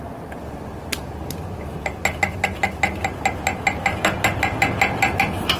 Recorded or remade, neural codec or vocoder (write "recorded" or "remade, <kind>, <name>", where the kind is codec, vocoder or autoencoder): recorded